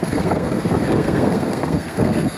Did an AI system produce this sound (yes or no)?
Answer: yes